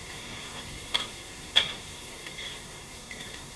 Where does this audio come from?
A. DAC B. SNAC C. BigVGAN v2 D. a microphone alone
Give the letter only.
B